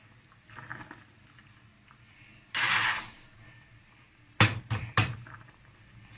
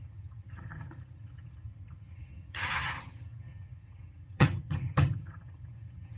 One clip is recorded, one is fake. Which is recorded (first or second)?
first